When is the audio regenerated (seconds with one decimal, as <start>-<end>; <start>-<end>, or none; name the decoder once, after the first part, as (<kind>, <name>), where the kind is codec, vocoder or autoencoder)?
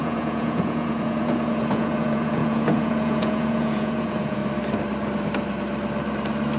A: 0.0-4.4 (vocoder, Vocos)